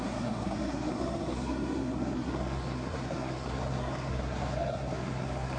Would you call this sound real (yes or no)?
no